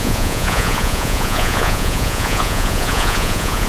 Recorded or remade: remade